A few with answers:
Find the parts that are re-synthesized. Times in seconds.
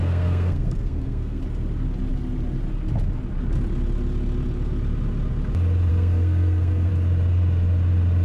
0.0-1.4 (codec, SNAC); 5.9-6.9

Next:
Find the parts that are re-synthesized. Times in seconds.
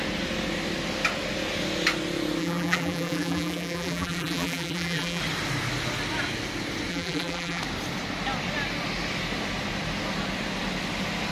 2.4-5.2 (vocoder, BigVGAN v2); 6.9-7.6